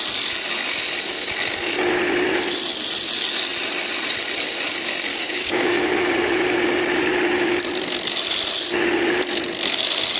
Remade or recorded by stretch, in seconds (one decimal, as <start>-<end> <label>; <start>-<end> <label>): 0.0-5.1 recorded; 5.1-5.8 remade; 5.8-10.2 recorded